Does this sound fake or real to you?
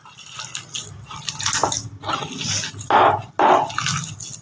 real